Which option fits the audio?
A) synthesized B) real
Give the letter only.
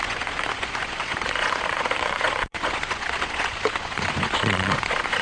A